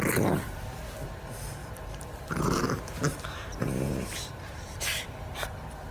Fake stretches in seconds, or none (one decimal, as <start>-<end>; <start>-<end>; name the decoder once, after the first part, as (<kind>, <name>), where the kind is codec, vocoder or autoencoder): 1.6-5.1 (vocoder, BigVGAN v2)